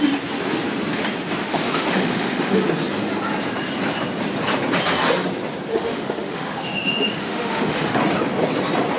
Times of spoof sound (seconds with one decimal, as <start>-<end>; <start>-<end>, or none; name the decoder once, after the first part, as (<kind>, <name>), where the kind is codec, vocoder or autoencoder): 1.4-2.6 (autoencoder, DAC-VAE); 5.7-8.0